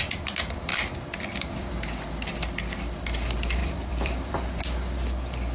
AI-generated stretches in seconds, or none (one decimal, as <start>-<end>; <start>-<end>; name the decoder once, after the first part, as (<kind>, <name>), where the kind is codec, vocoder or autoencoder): 0.7-1.7 (vocoder, BigVGAN v2); 3.6-4.6